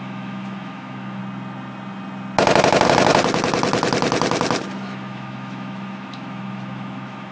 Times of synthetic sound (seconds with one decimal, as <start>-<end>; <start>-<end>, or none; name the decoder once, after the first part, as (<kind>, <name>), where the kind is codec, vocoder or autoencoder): 0.0-1.2 (autoencoder, DAC-VAE); 4.8-7.3